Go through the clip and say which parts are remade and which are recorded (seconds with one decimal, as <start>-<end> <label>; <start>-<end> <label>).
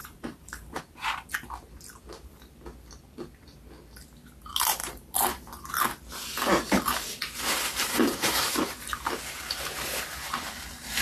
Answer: 0.0-0.8 remade; 0.8-4.8 recorded; 4.8-5.7 remade; 5.7-7.7 recorded; 7.7-8.9 remade; 8.9-11.0 recorded